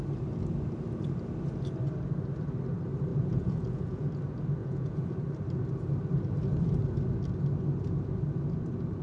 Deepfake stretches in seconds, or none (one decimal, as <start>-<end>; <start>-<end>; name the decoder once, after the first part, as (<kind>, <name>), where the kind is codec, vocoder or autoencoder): 3.1-4.1 (vocoder, Vocos); 4.6-5.2